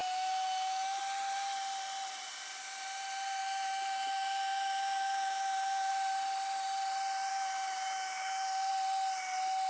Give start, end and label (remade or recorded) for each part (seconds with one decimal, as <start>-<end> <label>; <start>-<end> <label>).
0.0-1.0 remade; 1.0-3.4 recorded; 3.4-5.9 remade; 5.9-7.3 recorded; 7.3-8.7 remade; 8.7-9.7 recorded